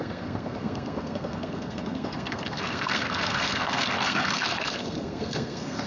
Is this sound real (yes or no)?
no